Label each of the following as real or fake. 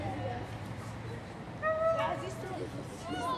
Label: real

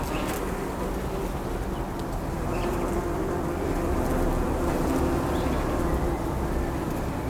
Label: real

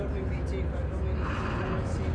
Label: real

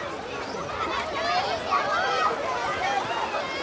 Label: real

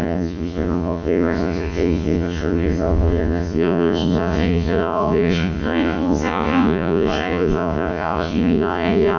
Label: fake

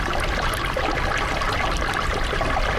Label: real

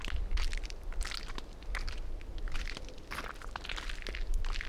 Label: real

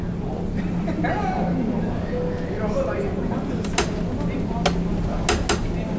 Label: real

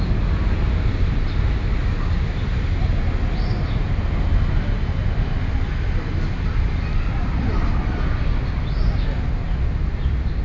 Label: real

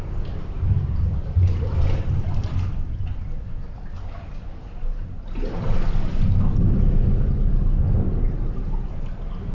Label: real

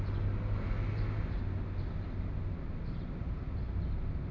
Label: real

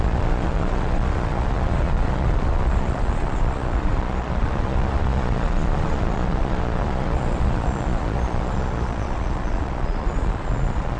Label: fake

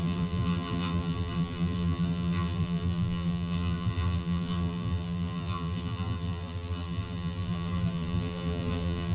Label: fake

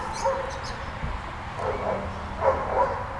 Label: real